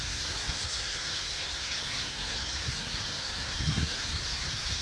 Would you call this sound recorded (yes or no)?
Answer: no